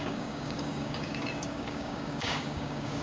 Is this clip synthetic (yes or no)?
yes